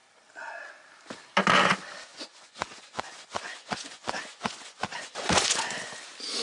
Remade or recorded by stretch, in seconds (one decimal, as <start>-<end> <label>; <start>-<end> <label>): 0.0-2.1 recorded; 2.1-5.9 remade; 5.9-6.4 recorded